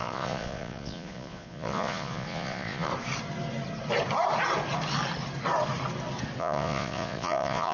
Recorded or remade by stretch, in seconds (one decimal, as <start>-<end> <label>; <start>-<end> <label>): 0.0-2.9 remade; 2.9-6.4 recorded; 6.4-7.7 remade